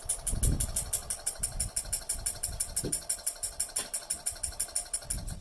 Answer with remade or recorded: recorded